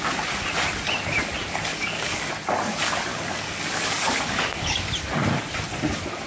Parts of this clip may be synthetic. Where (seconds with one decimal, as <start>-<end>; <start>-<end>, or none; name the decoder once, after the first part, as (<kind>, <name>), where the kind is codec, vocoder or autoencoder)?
1.7-2.3 (codec, DAC); 3.1-4.9